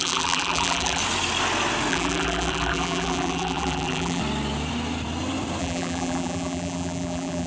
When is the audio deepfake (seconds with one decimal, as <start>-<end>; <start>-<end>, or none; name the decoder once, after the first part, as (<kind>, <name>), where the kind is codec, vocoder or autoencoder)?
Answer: 0.0-1.0 (vocoder, BigVGAN v2); 1.9-4.2; 5.6-7.5